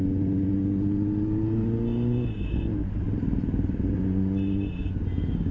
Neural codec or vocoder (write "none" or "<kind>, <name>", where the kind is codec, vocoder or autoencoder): none